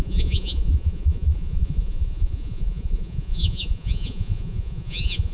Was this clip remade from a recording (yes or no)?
yes